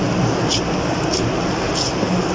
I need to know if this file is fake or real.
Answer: real